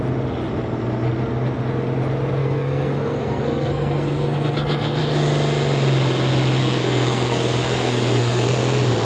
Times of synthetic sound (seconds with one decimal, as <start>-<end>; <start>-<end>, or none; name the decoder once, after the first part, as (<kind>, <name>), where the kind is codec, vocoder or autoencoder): 2.4-5.0 (codec, SNAC); 6.6-8.6